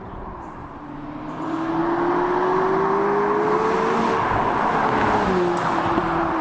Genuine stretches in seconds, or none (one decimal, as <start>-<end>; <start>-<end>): 0.6-1.3; 1.8-5.6